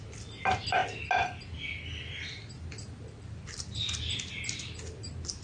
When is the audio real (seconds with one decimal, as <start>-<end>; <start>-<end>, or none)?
0.0-5.4